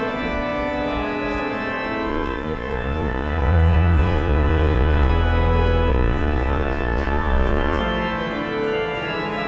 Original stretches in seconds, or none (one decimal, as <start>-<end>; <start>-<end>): 0.0-2.1; 5.1-5.9; 7.8-9.5